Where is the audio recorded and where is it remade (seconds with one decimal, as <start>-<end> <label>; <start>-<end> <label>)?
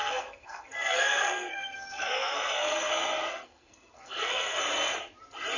0.0-2.9 remade; 2.9-3.3 recorded; 3.3-4.6 remade; 4.6-5.6 recorded